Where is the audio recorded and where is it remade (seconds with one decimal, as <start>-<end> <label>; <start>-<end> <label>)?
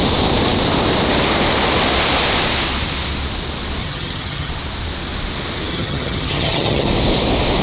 0.0-3.8 recorded; 3.8-4.5 remade; 4.5-5.7 recorded; 5.7-6.9 remade; 6.9-7.6 recorded